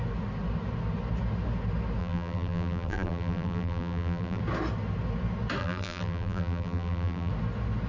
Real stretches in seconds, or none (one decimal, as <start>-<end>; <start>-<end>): 0.0-2.0; 4.4-5.6; 7.3-7.9